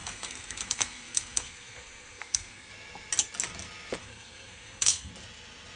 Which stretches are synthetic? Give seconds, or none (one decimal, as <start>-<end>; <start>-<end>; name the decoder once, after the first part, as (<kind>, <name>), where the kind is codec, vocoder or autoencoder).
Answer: 0.0-2.7 (codec, SNAC); 4.0-5.1